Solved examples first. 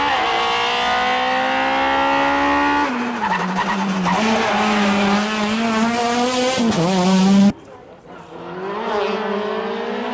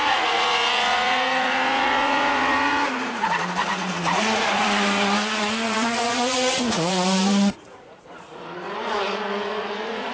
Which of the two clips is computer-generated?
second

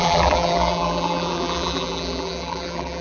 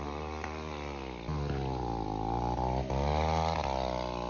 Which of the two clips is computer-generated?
first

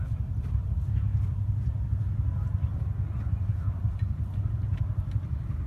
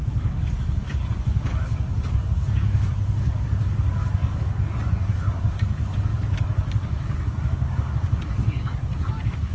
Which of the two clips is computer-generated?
second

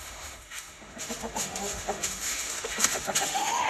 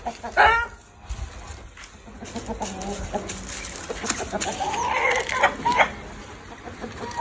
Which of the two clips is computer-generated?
first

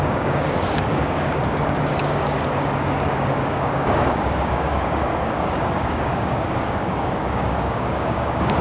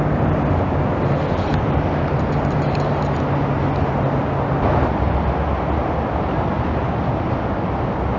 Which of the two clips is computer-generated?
first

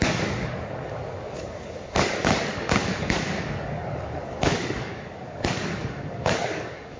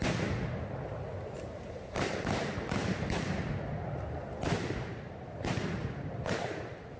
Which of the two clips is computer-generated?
first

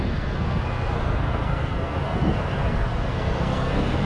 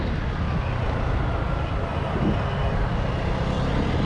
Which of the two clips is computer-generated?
first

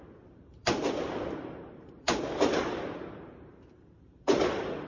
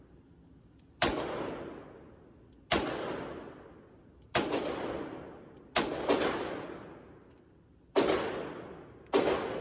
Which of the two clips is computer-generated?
first